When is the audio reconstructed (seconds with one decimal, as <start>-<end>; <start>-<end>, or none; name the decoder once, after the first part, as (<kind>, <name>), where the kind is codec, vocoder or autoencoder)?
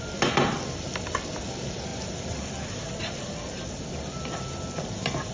none